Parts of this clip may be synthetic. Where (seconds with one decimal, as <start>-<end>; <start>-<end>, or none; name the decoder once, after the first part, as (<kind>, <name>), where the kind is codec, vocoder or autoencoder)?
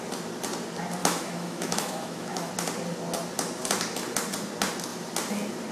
1.0-2.5 (autoencoder, DAC-VAE)